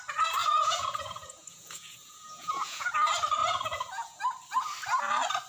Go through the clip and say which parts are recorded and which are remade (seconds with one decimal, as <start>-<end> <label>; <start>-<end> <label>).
0.0-0.4 recorded; 0.4-2.9 remade; 2.9-3.4 recorded; 3.4-4.2 remade; 4.2-5.5 recorded